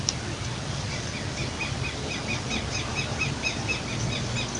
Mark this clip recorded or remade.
recorded